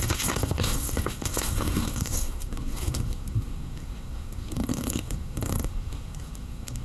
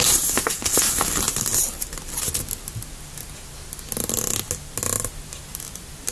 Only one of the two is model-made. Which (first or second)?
first